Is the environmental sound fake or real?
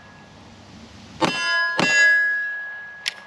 real